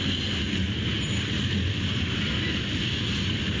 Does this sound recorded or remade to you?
recorded